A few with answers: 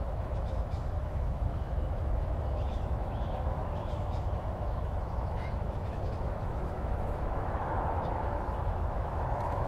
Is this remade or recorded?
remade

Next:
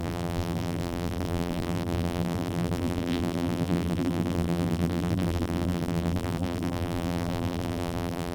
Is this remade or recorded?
remade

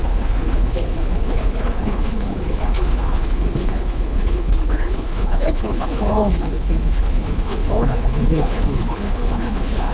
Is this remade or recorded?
remade